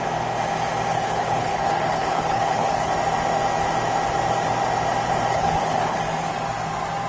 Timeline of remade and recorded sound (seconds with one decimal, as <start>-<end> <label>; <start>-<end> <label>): 0.0-0.9 recorded; 0.9-2.9 remade; 2.9-5.3 recorded; 5.3-6.0 remade; 6.0-7.1 recorded